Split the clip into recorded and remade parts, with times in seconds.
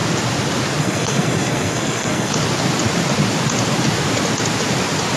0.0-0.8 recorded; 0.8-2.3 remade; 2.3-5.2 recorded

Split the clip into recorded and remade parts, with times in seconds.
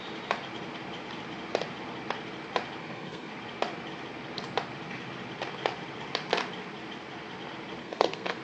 0.0-2.8 recorded; 2.8-3.3 remade; 3.3-7.8 recorded; 7.8-8.4 remade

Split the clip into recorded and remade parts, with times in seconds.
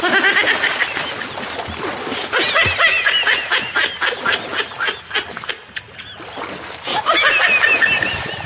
0.0-8.5 recorded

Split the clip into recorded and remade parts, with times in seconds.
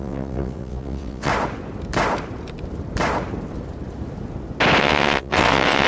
0.0-1.3 remade; 1.3-4.8 recorded; 4.8-5.9 remade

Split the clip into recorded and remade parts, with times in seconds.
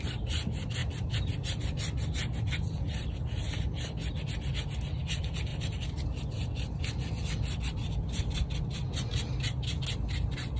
0.0-0.8 recorded; 0.8-1.5 remade; 1.5-5.5 recorded; 5.5-6.8 remade; 6.8-10.6 recorded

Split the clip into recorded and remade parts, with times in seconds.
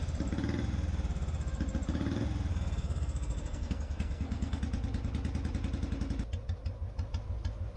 0.0-2.5 recorded; 2.5-4.6 remade; 4.6-7.8 recorded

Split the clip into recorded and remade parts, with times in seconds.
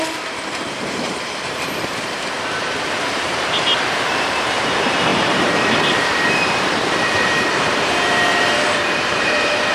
0.0-9.7 remade